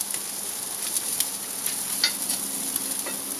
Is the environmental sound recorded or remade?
recorded